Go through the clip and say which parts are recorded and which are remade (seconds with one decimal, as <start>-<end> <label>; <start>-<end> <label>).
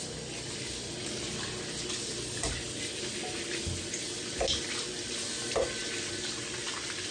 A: 0.0-7.1 recorded